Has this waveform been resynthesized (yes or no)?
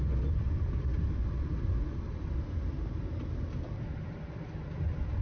no